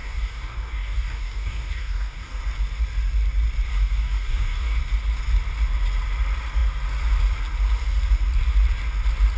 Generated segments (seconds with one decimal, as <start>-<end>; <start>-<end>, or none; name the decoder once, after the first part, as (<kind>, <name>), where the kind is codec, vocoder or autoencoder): 0.0-2.4 (codec, DAC); 3.7-4.8